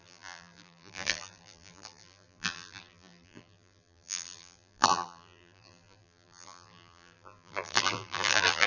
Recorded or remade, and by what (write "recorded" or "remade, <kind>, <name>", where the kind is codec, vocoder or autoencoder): remade, vocoder, BigVGAN v2